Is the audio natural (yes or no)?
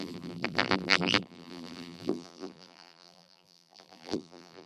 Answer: no